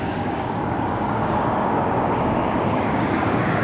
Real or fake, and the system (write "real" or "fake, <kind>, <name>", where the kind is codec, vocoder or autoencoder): fake, codec, DAC